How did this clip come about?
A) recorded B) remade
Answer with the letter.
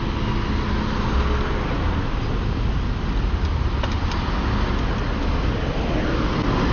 A